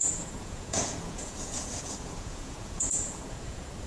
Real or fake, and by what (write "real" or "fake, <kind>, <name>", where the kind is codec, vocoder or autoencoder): fake, vocoder, Vocos